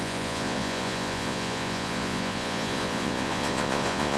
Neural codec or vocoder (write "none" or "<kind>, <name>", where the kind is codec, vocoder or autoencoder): vocoder, Vocos